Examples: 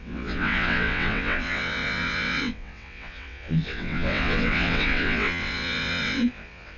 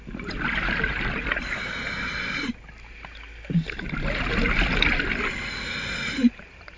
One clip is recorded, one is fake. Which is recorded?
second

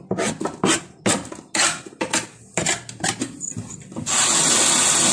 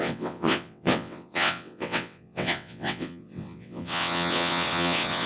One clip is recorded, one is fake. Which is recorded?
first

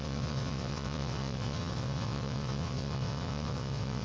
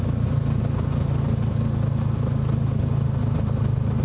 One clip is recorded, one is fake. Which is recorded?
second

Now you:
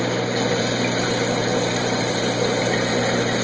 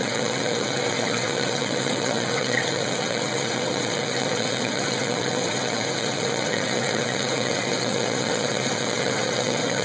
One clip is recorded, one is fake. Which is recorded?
first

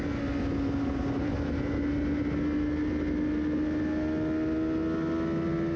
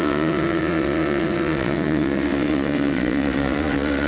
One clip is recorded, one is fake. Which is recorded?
first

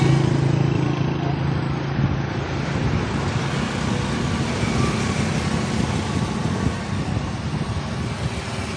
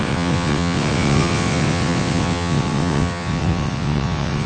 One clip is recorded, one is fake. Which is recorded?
first